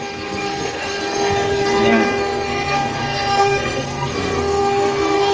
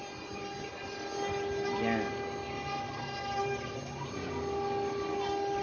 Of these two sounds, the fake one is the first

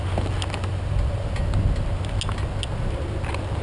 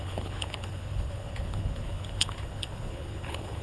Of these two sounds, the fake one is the second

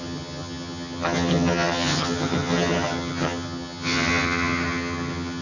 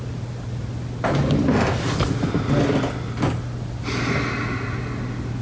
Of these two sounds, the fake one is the first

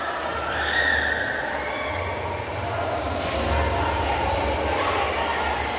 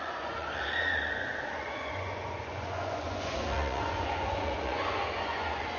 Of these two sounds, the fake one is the second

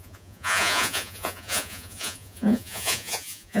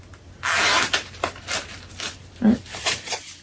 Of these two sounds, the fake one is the first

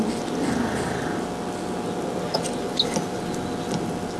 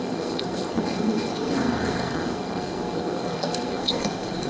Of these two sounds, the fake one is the second